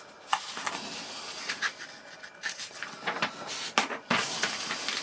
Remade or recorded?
recorded